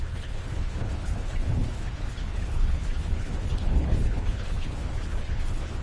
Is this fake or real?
fake